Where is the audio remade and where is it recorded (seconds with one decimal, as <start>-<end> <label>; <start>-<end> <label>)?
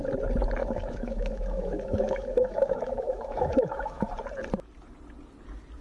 0.0-0.6 recorded; 0.6-4.1 remade; 4.1-5.8 recorded